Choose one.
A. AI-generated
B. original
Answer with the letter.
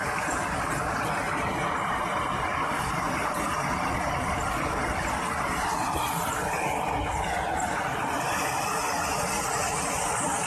B